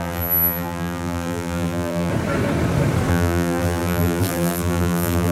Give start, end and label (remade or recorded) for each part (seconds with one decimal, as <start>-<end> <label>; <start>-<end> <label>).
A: 0.0-2.1 remade; 2.1-3.1 recorded; 3.1-5.3 remade